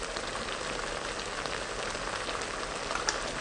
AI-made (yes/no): no